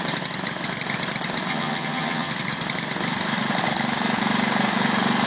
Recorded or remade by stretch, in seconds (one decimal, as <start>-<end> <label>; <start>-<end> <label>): 0.0-1.5 recorded; 1.5-2.3 remade; 2.3-5.3 recorded